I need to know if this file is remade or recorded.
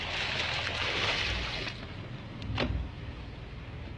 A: recorded